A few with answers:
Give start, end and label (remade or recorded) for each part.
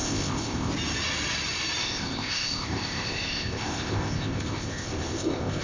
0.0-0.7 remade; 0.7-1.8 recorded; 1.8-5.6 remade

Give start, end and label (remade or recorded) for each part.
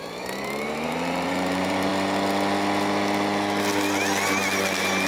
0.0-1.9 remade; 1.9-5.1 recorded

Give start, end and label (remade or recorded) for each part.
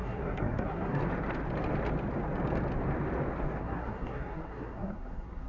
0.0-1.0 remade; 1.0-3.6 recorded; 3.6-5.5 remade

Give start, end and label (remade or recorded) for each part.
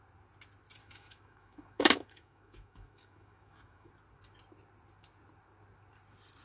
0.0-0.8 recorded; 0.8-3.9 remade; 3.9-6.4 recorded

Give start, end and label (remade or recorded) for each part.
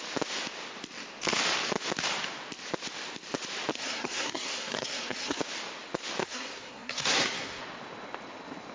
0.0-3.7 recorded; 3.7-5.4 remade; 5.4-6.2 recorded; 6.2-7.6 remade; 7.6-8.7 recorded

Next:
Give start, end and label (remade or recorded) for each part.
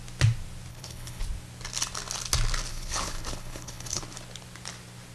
0.0-0.7 recorded; 0.7-1.2 remade; 1.2-2.7 recorded; 2.7-4.0 remade; 4.0-5.1 recorded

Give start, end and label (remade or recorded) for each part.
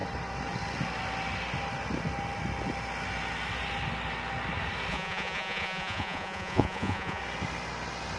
0.0-4.9 recorded; 4.9-7.2 remade; 7.2-8.2 recorded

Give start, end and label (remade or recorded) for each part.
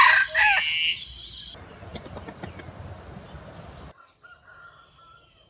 0.0-0.9 recorded; 0.9-1.4 remade; 1.4-1.9 recorded; 1.9-2.6 remade; 2.6-5.5 recorded